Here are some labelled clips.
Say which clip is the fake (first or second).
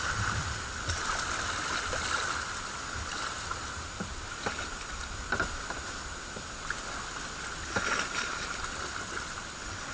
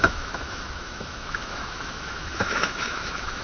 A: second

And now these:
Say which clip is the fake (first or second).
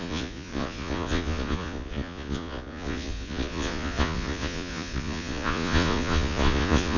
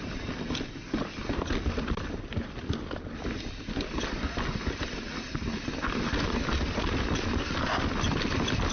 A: first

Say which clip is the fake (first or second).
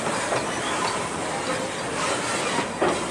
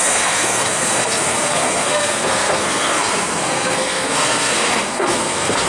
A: second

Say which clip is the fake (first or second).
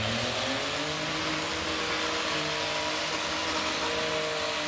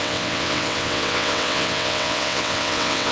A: second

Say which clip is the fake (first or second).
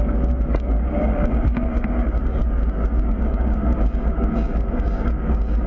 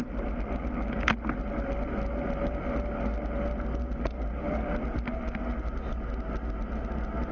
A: first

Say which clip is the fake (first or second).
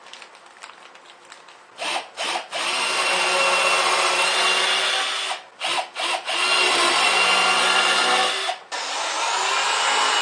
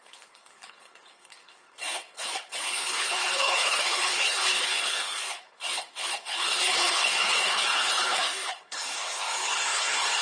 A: second